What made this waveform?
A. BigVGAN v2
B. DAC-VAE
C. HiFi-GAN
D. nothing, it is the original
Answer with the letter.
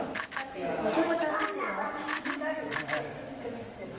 B